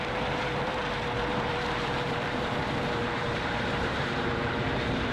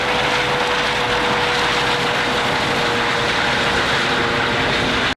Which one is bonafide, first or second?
second